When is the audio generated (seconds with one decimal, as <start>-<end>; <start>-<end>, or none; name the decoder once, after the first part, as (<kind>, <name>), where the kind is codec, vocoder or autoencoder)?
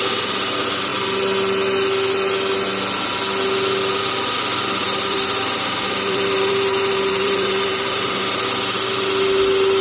4.8-8.4 (vocoder, BigVGAN v2)